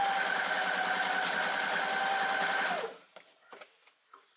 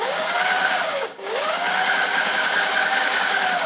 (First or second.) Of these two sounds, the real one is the first